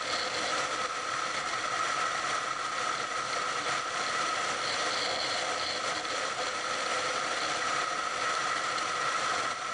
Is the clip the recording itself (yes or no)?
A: yes